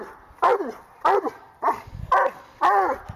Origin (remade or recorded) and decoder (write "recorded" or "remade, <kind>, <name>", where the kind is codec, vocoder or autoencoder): recorded